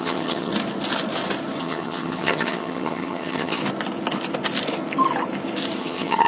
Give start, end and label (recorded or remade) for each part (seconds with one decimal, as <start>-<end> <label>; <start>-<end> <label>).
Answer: 0.0-0.5 remade; 0.5-1.6 recorded; 1.6-3.6 remade; 3.6-5.8 recorded; 5.8-6.3 remade